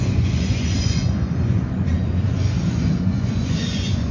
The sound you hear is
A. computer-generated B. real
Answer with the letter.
A